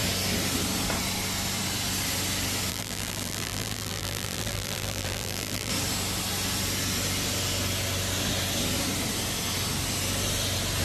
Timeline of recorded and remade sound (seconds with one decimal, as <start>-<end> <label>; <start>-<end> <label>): 0.0-2.7 recorded; 2.7-5.7 remade; 5.7-10.8 recorded